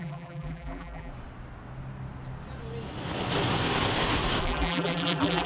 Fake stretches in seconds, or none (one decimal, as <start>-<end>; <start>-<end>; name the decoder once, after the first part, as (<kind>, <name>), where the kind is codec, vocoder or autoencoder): 0.0-1.1 (vocoder, BigVGAN v2); 4.4-5.5